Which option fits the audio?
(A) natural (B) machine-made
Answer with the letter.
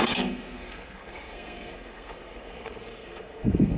B